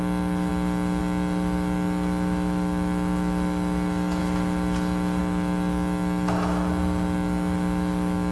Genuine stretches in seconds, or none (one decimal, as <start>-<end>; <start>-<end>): 0.5-1.0; 4.2-5.2